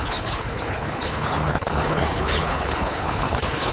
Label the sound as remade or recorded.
remade